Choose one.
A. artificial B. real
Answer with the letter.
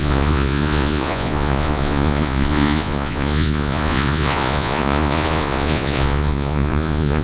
A